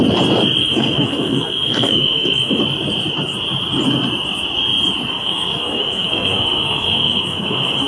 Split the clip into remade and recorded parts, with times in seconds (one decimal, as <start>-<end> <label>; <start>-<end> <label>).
0.0-0.6 recorded; 0.6-2.6 remade; 2.6-5.1 recorded; 5.1-7.9 remade